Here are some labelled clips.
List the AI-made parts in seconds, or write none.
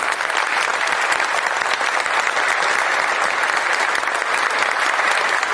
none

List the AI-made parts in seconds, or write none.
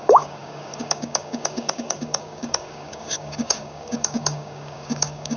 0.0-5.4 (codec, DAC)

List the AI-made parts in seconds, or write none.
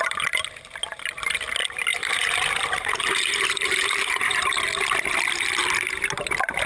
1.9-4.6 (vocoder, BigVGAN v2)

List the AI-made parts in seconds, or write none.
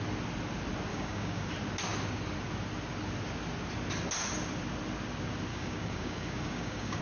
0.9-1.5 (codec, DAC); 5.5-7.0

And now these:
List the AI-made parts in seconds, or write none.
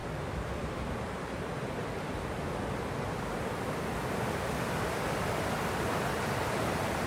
0.6-1.8 (vocoder, BigVGAN v2); 6.1-7.1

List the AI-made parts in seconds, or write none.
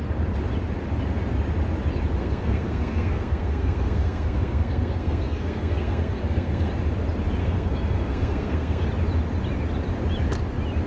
2.2-6.7 (codec, SNAC); 7.4-8.9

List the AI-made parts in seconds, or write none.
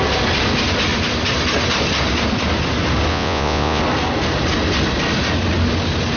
3.1-3.8 (vocoder, Vocos)